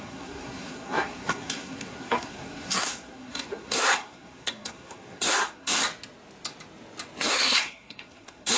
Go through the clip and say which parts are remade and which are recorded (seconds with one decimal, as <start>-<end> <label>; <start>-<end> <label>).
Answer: 0.0-5.8 remade; 5.8-7.3 recorded; 7.3-8.6 remade